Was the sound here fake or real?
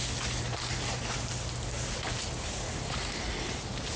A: real